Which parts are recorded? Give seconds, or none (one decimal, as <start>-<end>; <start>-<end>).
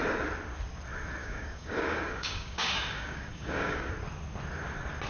0.0-1.2; 3.9-5.1